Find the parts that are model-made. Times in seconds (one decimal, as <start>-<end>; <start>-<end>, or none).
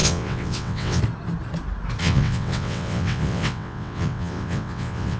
0.0-1.0; 2.0-5.2